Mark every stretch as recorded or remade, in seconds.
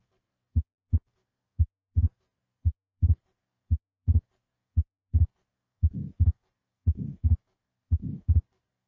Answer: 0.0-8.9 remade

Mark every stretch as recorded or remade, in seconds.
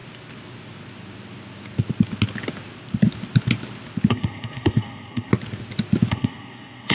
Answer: 0.0-4.1 recorded; 4.1-5.3 remade; 5.3-6.1 recorded; 6.1-6.9 remade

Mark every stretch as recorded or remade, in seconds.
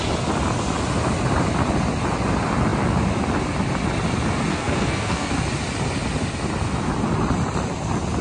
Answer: 0.0-4.5 recorded; 4.5-5.3 remade; 5.3-8.2 recorded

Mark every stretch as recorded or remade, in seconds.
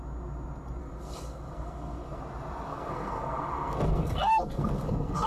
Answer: 0.0-0.8 recorded; 0.8-2.2 remade; 2.2-2.7 recorded; 2.7-5.3 remade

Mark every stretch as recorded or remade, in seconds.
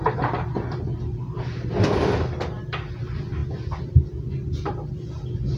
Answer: 0.0-5.6 recorded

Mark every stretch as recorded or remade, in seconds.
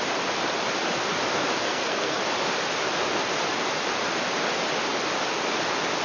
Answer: 0.0-1.6 recorded; 1.6-2.2 remade; 2.2-6.0 recorded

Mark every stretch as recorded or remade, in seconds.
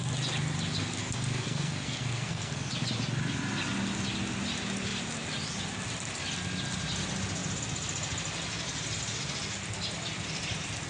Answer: 0.0-1.0 recorded; 1.0-2.7 remade; 2.7-10.9 recorded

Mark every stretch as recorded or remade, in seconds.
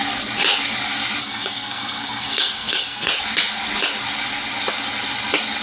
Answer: 0.0-1.2 recorded; 1.2-3.1 remade; 3.1-5.6 recorded